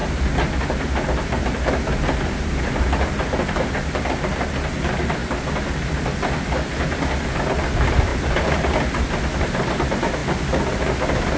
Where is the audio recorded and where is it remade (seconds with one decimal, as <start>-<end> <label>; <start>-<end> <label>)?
0.0-11.4 recorded